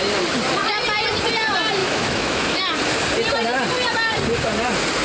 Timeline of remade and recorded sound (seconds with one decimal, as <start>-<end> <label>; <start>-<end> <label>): 0.0-1.8 recorded; 1.8-2.6 remade; 2.6-5.0 recorded